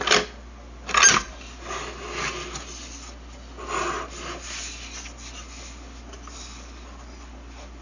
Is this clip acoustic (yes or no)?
yes